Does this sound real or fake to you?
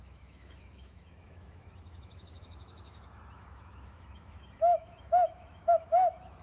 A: fake